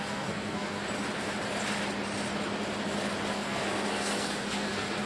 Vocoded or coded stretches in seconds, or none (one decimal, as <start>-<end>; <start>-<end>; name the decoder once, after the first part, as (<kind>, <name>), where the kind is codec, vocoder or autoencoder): 0.0-0.8 (codec, SNAC); 3.3-5.1